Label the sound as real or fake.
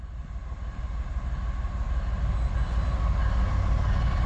real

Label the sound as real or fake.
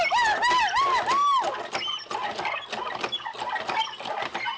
real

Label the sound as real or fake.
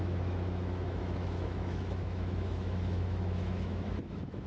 fake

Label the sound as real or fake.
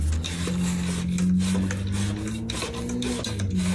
real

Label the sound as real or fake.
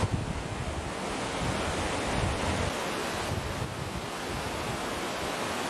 real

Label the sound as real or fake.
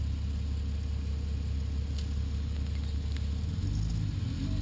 real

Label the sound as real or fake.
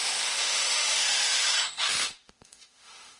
fake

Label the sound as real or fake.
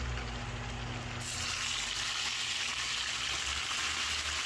real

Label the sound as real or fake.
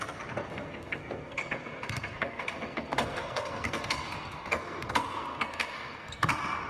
fake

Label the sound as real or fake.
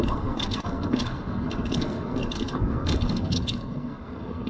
fake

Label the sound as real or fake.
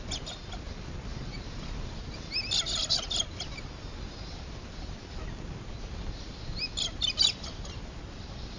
real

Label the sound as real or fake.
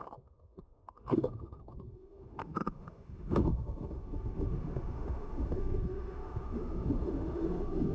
fake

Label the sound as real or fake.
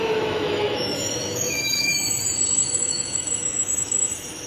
fake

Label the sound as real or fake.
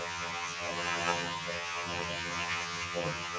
fake